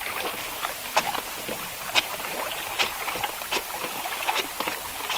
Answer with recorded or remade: recorded